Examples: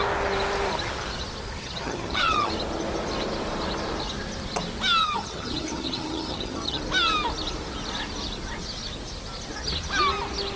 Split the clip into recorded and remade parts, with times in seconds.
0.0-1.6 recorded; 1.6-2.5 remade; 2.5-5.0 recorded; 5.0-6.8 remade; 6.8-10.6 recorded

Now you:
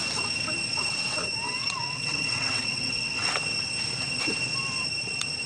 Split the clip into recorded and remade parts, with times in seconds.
0.0-1.6 recorded; 1.6-3.3 remade; 3.3-5.5 recorded

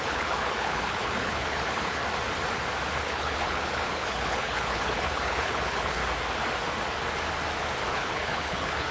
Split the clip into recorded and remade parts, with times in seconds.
0.0-2.0 remade; 2.0-3.0 recorded; 3.0-6.0 remade; 6.0-7.9 recorded; 7.9-8.9 remade